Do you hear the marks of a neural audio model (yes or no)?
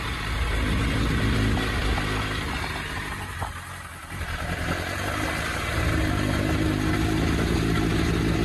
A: no